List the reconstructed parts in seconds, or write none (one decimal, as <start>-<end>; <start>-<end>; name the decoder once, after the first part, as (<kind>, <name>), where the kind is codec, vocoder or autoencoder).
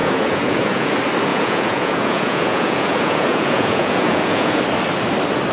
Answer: 0.0-0.9 (vocoder, Vocos); 1.3-4.6